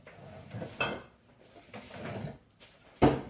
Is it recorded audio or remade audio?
recorded